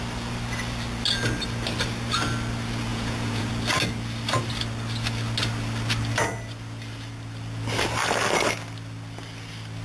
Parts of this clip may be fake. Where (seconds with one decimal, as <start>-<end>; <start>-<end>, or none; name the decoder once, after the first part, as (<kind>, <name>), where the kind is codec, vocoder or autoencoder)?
2.9-3.5 (vocoder, Vocos)